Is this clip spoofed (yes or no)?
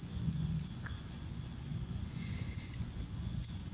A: yes